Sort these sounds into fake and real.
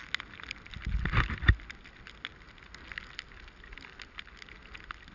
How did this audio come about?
real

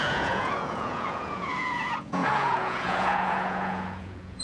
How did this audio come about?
fake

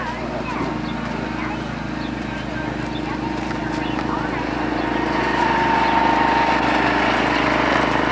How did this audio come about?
real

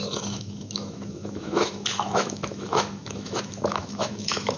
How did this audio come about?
fake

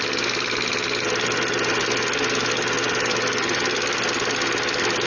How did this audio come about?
real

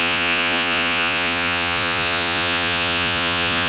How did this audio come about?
fake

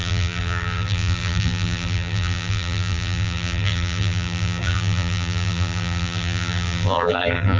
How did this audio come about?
fake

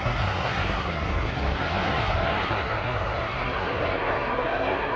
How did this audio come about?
fake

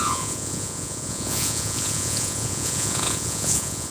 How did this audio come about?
fake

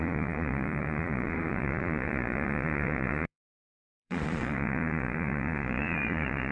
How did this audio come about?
fake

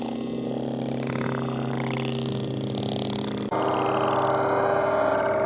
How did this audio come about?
real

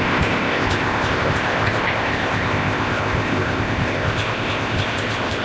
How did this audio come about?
fake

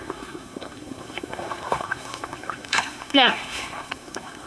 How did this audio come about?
fake